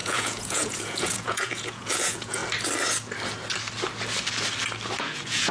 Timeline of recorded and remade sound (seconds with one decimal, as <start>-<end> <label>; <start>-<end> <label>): 0.0-2.4 remade; 2.4-5.0 recorded; 5.0-5.5 remade